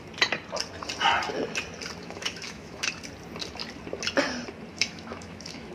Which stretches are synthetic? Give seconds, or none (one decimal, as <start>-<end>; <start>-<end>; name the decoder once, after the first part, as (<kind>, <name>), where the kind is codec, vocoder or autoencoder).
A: 2.0-2.9 (autoencoder, DAC-VAE); 4.7-5.7